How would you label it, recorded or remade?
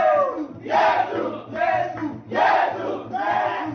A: recorded